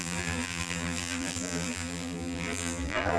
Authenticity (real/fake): fake